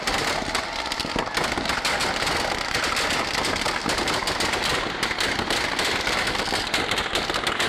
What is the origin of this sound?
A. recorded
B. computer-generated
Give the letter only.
A